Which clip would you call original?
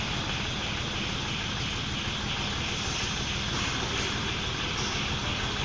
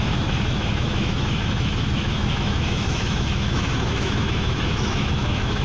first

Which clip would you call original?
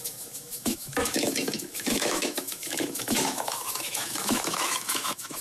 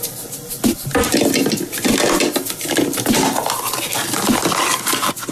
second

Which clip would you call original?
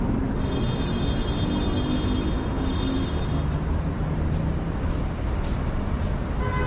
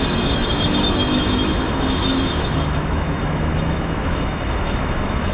first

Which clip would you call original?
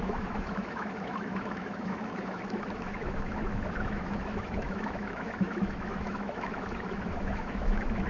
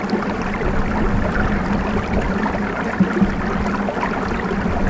second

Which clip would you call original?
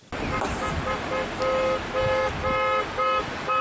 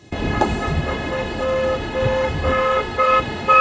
first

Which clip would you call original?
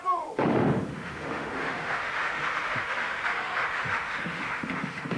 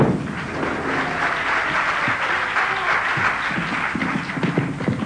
second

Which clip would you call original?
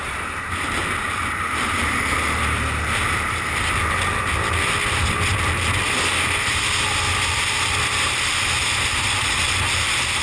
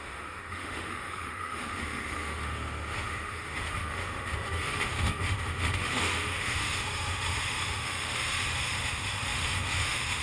first